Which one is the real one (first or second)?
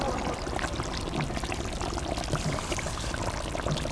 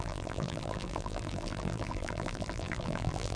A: first